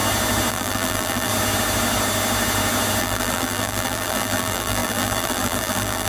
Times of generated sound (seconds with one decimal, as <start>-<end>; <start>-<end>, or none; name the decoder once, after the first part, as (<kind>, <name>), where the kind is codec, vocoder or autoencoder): 0.5-1.3 (vocoder, BigVGAN v2); 3.0-6.1